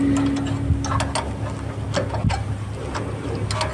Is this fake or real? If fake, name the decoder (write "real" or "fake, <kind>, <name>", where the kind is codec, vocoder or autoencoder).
real